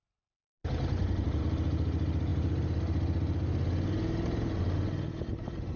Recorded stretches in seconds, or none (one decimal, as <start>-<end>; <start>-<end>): 0.0-5.8